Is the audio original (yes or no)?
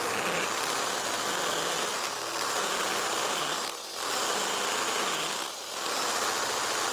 yes